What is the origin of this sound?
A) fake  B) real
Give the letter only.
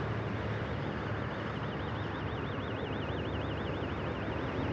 B